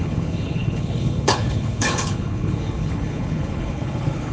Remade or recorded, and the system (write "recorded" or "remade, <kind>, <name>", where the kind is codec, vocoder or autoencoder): remade, codec, HILCodec